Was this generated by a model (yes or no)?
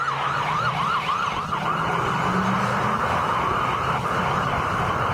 no